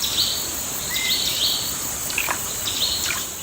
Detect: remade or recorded recorded